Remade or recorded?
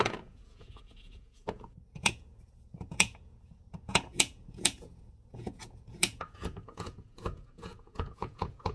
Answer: remade